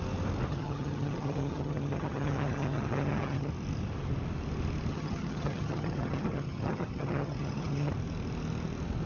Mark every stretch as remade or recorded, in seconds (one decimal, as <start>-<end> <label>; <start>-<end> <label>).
0.0-0.5 recorded; 0.5-3.5 remade; 3.5-4.9 recorded; 4.9-7.9 remade; 7.9-9.1 recorded